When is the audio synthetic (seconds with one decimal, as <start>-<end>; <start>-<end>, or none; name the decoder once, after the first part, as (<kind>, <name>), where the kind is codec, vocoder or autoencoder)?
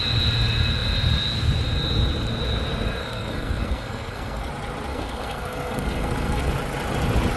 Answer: 3.0-4.5 (codec, SNAC); 4.9-6.5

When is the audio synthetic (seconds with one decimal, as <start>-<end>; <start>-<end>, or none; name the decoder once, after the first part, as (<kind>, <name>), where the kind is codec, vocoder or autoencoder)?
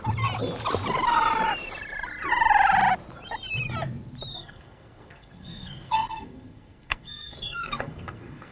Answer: 4.3-8.5 (codec, SNAC)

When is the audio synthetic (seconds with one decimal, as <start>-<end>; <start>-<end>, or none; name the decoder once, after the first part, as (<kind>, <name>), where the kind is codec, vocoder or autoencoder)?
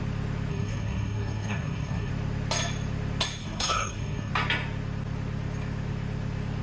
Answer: 0.5-2.1 (codec, SNAC); 3.4-4.3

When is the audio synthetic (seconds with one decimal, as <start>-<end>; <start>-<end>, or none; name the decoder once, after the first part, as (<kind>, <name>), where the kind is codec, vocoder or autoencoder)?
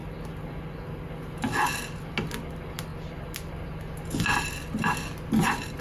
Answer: none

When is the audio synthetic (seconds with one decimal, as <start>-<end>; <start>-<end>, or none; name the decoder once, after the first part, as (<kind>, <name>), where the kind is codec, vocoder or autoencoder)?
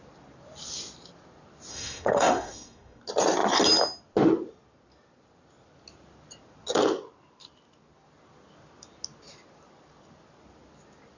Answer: 1.7-3.0 (codec, SNAC)